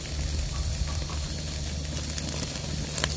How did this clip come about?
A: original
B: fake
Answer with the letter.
A